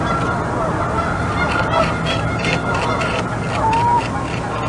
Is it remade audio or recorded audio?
recorded